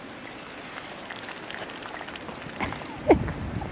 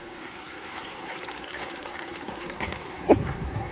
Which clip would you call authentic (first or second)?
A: first